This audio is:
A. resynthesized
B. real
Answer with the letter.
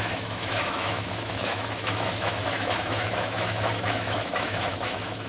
A